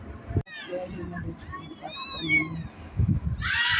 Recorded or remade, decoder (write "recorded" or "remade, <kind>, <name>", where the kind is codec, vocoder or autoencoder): recorded